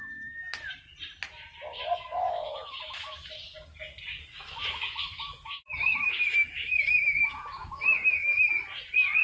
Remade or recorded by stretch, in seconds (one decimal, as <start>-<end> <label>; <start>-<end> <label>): 0.0-1.7 recorded; 1.7-3.3 remade; 3.3-4.1 recorded; 4.1-8.5 remade; 8.5-9.2 recorded